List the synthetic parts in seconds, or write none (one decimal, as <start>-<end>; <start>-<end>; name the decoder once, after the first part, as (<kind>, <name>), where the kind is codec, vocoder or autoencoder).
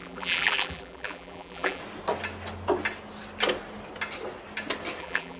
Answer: 0.0-1.8 (vocoder, BigVGAN v2); 5.0-5.4